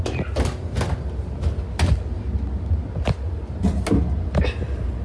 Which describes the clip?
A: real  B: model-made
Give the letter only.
A